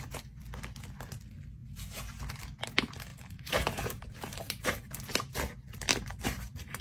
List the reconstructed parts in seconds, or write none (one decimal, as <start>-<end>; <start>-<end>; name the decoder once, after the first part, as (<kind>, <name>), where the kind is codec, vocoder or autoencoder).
3.1-5.0 (vocoder, BigVGAN v2); 5.9-6.8